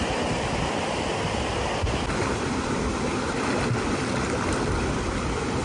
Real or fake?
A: real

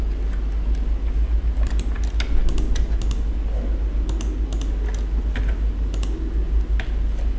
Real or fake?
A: real